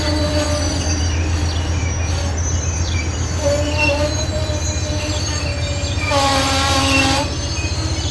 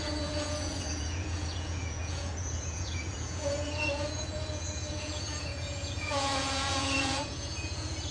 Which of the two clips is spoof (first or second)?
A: second